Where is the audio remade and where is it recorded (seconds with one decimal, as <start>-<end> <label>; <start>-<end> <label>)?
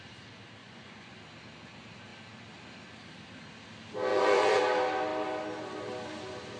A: 0.0-0.6 recorded; 0.6-1.2 remade; 1.2-4.1 recorded; 4.1-4.6 remade; 4.6-6.6 recorded